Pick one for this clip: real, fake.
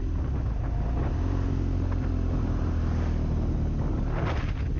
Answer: real